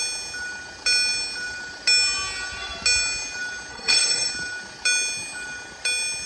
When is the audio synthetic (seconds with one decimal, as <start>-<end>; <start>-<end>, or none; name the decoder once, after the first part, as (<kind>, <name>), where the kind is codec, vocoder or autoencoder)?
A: 3.7-4.3 (codec, SNAC)